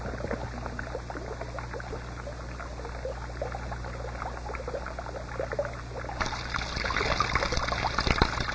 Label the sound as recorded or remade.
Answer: recorded